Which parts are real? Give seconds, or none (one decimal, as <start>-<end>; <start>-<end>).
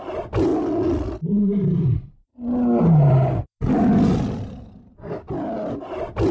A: 0.5-1.2; 2.3-5.7